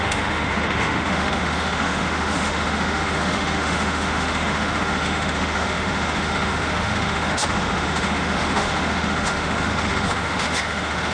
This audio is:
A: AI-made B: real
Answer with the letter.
A